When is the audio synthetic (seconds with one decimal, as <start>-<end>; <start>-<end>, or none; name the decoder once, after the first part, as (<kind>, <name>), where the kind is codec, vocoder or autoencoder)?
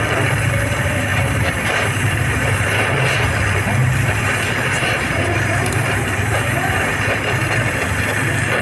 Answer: 1.1-3.3 (vocoder, BigVGAN v2); 3.8-7.6